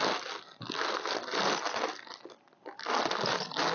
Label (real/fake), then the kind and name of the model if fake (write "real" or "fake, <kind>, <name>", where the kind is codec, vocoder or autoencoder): real